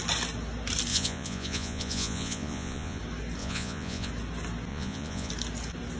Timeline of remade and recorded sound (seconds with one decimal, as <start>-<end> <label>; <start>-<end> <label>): 0.0-0.9 recorded; 0.9-3.0 remade; 3.0-3.4 recorded; 3.4-4.1 remade; 4.1-4.7 recorded; 4.7-5.3 remade; 5.3-6.0 recorded